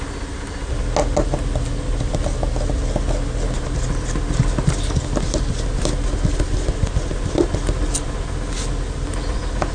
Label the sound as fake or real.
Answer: real